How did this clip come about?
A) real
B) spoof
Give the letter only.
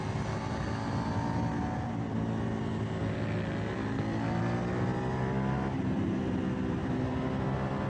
A